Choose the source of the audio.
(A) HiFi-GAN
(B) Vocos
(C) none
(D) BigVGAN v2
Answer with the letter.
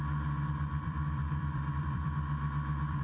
D